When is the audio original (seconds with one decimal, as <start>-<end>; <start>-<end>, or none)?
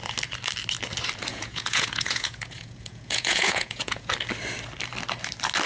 0.0-1.3; 4.1-5.7